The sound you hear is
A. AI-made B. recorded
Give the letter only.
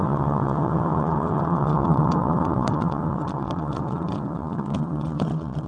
A